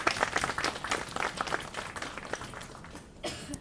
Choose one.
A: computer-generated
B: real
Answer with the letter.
B